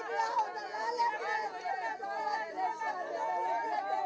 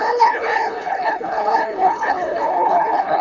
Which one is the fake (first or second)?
second